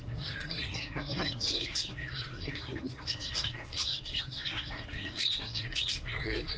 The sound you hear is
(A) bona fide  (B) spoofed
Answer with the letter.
B